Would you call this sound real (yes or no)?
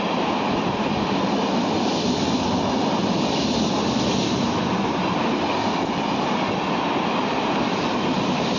yes